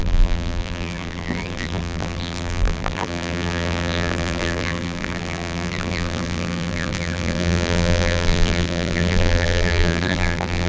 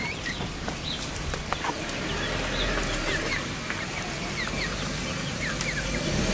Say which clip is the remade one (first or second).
first